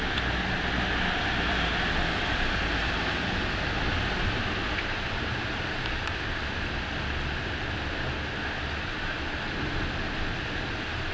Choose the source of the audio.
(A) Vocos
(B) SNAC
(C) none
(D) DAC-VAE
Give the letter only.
C